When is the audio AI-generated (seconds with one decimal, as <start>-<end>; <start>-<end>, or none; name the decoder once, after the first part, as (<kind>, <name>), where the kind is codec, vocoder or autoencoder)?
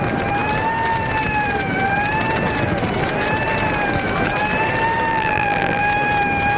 5.1-5.8 (vocoder, BigVGAN v2)